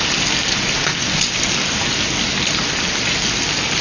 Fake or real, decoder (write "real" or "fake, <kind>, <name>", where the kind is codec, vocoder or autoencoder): real